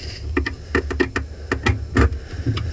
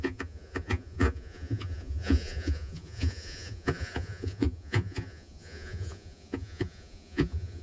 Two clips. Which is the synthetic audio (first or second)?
second